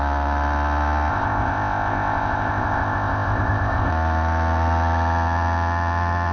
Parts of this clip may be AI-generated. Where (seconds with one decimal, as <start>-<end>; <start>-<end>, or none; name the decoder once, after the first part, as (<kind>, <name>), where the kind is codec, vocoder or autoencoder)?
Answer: 1.1-3.9 (codec, ZipCodec)